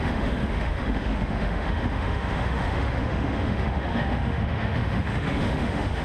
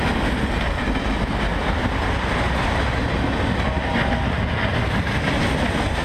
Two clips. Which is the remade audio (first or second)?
first